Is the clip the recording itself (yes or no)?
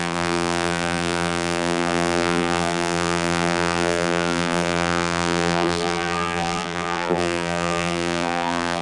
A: no